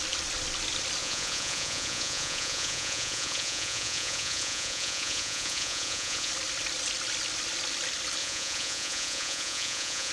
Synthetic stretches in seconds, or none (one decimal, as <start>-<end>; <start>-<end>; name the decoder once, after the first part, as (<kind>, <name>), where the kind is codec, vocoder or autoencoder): 1.0-6.3 (vocoder, Vocos); 8.2-10.1